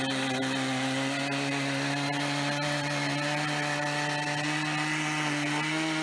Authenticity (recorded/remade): recorded